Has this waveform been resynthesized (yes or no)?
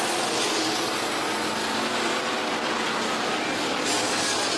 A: no